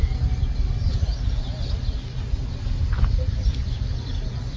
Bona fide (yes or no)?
yes